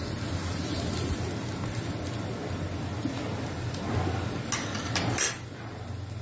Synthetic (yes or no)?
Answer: no